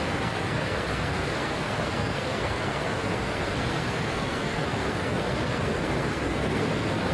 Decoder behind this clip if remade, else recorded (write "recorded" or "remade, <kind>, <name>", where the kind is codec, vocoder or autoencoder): remade, codec, SNAC